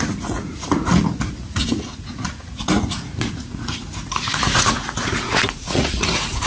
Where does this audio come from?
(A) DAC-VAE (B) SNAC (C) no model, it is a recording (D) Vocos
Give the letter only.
D